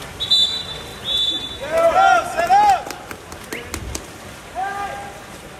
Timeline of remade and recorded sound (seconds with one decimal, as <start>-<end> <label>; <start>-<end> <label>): 0.0-5.6 recorded